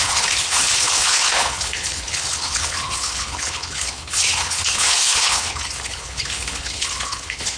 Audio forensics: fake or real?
fake